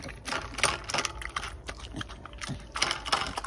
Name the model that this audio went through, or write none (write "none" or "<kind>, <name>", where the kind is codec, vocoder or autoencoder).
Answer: none